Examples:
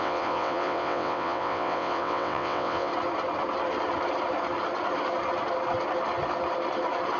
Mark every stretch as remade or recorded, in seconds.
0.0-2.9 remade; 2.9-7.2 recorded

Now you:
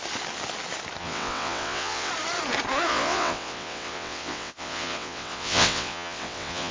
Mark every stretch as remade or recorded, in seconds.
0.0-1.0 recorded; 1.0-2.1 remade; 2.1-2.9 recorded; 2.9-6.7 remade

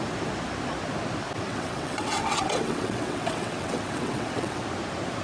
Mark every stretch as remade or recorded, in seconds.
0.0-1.5 recorded; 1.5-4.6 remade; 4.6-5.2 recorded

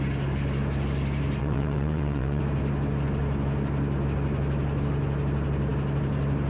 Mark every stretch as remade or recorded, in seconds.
0.0-1.4 recorded; 1.4-2.4 remade; 2.4-6.5 recorded

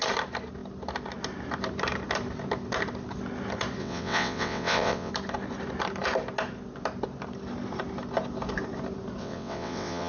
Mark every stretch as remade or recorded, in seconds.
0.0-3.8 recorded; 3.8-5.1 remade; 5.1-9.2 recorded; 9.2-10.1 remade